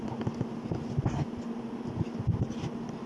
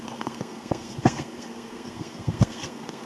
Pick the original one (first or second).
first